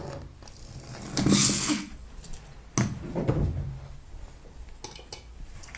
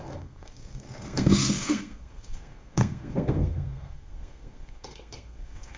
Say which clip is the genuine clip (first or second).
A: first